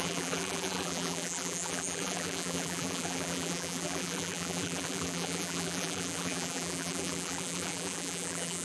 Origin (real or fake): fake